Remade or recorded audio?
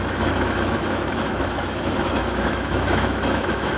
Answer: remade